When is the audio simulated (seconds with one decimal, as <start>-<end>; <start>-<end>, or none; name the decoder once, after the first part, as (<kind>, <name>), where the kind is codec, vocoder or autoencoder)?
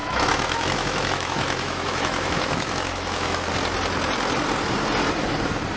0.0-3.5 (autoencoder, DAC-VAE)